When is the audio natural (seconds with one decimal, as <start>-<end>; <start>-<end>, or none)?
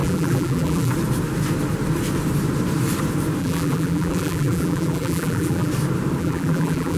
0.9-3.4; 5.7-6.2